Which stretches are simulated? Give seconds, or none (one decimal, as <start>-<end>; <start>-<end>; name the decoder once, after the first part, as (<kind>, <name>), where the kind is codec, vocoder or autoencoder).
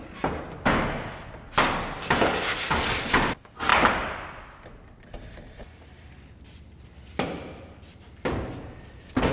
none